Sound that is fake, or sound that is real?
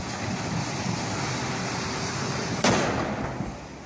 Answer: real